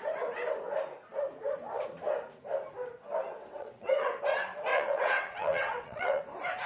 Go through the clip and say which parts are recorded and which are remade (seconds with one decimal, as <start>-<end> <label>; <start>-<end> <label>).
0.0-3.4 recorded; 3.4-4.2 remade; 4.2-4.7 recorded; 4.7-6.2 remade; 6.2-6.7 recorded